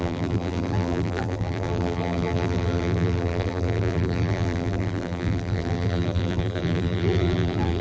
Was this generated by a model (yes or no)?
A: yes